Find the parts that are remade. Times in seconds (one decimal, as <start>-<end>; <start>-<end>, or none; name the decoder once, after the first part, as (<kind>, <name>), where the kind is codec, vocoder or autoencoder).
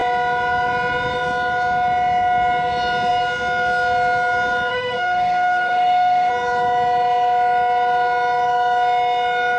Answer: 4.7-6.3 (autoencoder, DAC-VAE)